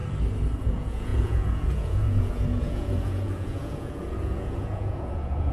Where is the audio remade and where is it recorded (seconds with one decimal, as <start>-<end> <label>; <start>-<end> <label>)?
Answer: 0.0-0.6 recorded; 0.6-5.5 remade